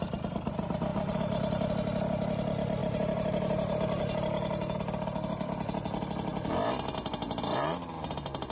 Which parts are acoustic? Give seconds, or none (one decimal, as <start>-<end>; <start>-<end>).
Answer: 0.0-0.9; 1.7-2.8; 4.0-8.5